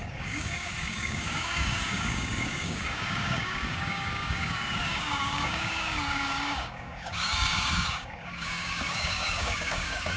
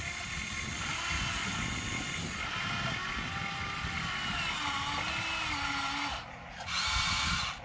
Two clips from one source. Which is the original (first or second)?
second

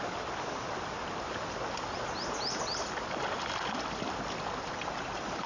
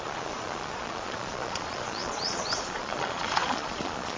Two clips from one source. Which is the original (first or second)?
first